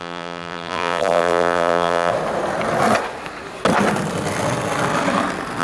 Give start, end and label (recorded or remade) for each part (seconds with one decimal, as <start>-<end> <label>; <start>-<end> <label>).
0.0-2.1 remade; 2.1-5.6 recorded